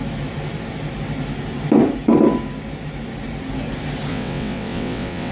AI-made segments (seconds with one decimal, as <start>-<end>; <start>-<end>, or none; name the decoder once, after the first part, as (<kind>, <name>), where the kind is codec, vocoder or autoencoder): 4.1-5.3 (vocoder, WaveNeXt)